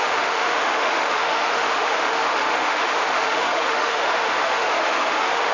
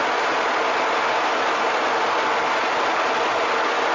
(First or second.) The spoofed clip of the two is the first